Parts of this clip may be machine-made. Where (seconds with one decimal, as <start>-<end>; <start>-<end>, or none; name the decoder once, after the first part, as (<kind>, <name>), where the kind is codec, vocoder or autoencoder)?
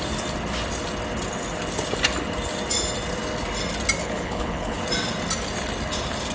4.0-4.8 (codec, HILCodec)